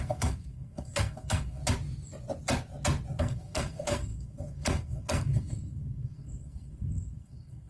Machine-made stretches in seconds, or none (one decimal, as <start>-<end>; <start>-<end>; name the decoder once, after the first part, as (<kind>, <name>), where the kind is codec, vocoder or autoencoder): 0.0-1.6 (codec, SNAC); 3.2-7.7